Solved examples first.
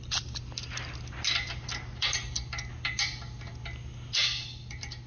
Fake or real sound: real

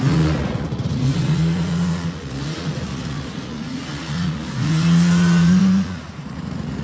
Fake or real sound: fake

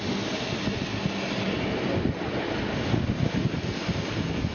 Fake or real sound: real